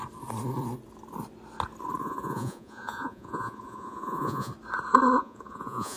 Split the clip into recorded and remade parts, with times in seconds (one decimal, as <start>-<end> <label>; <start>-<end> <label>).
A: 0.0-2.0 recorded; 2.0-4.5 remade; 4.5-5.2 recorded; 5.2-6.0 remade